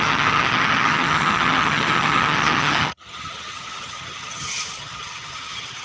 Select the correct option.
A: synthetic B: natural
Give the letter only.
A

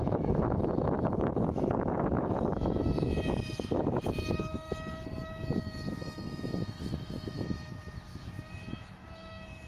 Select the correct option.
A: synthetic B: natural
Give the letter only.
A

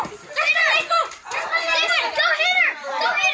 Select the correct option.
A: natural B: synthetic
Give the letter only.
A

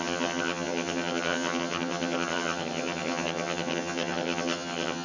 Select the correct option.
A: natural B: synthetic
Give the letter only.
B